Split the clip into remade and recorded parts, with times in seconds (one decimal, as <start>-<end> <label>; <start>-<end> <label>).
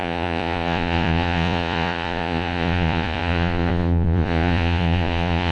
0.0-5.5 remade